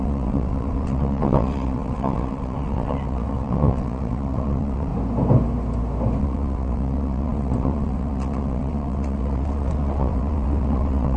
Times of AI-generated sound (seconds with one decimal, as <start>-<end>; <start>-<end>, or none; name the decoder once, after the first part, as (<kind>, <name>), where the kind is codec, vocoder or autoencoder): 0.0-4.9 (vocoder, WaveNeXt); 6.2-11.2